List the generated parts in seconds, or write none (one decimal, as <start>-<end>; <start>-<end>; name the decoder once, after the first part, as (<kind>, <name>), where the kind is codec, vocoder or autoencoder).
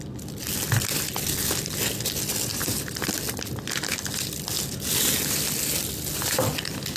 2.5-3.0 (vocoder, BigVGAN v2)